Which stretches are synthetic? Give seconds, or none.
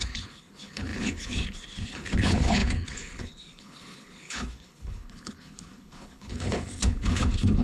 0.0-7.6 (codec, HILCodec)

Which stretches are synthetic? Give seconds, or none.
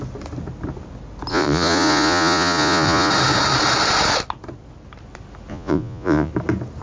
1.3-3.1 (vocoder, Vocos); 5.5-6.3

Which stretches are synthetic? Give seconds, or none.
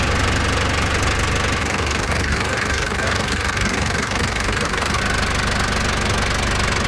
1.6-5.0 (codec, DAC)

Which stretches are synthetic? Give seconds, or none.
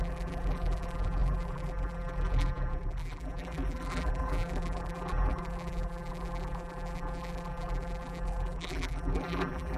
0.0-9.8 (vocoder, BigVGAN v2)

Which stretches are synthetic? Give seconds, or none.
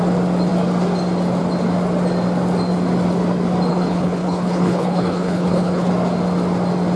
3.7-5.9 (codec, HILCodec)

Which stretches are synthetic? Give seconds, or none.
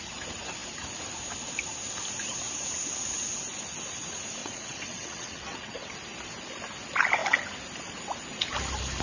4.4-5.9 (vocoder, WaveNeXt)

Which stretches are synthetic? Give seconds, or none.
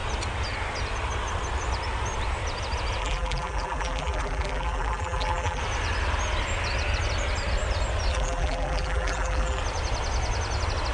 3.0-5.6 (vocoder, BigVGAN v2); 8.1-9.6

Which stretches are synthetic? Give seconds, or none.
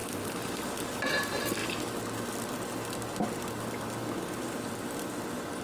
none